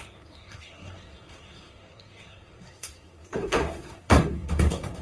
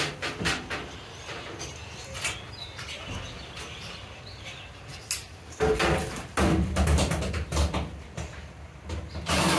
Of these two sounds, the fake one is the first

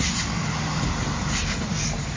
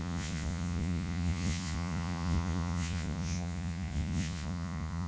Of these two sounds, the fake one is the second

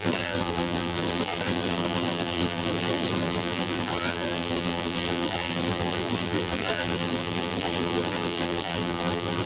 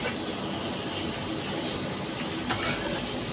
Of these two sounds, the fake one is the first